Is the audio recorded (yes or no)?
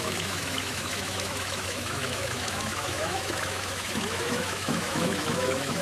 no